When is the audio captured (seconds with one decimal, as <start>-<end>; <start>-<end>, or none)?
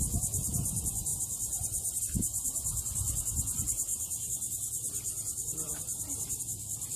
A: 0.0-1.1; 2.0-3.9; 6.4-7.0